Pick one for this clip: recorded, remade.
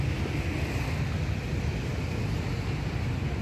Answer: recorded